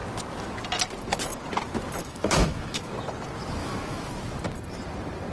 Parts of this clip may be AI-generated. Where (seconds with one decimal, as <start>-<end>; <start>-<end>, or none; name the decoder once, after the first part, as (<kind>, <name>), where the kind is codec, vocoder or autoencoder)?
2.0-2.9 (autoencoder, DAC-VAE); 3.6-4.1